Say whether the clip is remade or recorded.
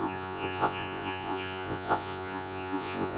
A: remade